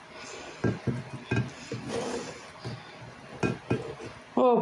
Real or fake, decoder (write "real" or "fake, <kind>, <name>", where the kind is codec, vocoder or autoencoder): real